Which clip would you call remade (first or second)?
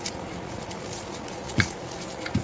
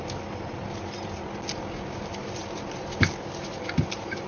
first